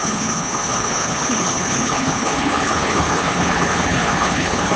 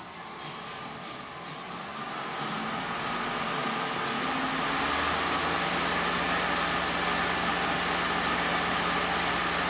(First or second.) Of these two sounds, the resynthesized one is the first